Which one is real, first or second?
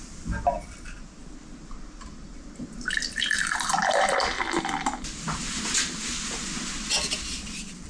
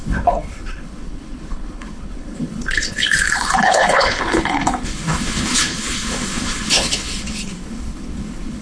first